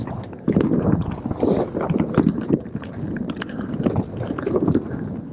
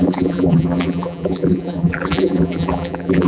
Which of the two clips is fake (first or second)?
second